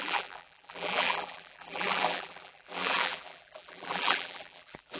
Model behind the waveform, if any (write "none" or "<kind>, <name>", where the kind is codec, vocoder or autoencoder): vocoder, BigVGAN v2